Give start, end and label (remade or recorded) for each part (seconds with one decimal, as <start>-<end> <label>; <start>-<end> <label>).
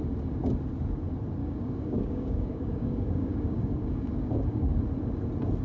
0.0-1.4 recorded; 1.4-4.8 remade; 4.8-5.6 recorded